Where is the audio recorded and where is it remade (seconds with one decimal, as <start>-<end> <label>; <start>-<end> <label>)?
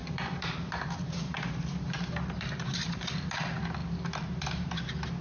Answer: 0.0-3.1 remade; 3.1-3.8 recorded; 3.8-4.7 remade; 4.7-5.2 recorded